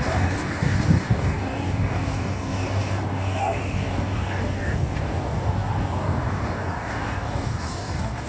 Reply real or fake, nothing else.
fake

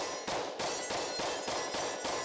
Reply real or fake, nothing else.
real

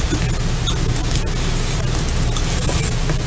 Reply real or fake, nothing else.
real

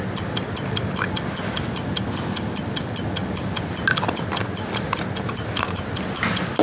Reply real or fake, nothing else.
real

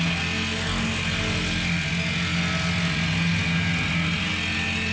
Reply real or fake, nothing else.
real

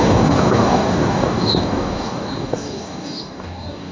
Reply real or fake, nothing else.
fake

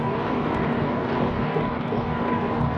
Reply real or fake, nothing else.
fake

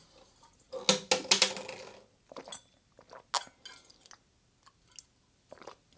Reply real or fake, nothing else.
real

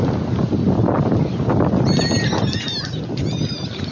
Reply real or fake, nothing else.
real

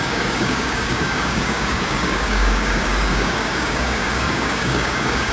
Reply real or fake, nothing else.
fake